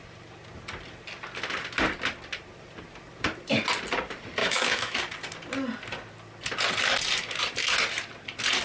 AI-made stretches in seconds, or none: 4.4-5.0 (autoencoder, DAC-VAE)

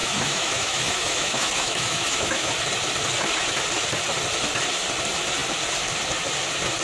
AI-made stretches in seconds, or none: 0.0-2.5 (autoencoder, DAC-VAE)

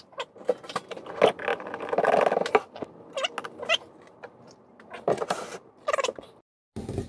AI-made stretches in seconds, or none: none

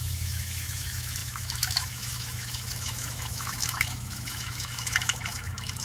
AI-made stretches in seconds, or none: 0.0-5.8 (autoencoder, DAC-VAE)

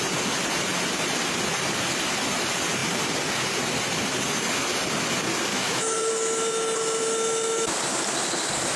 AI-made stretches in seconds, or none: 5.5-6.1 (autoencoder, DAC-VAE)